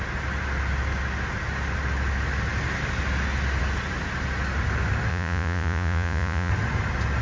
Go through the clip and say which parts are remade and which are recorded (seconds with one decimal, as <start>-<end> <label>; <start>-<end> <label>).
0.0-5.1 recorded; 5.1-6.5 remade; 6.5-7.2 recorded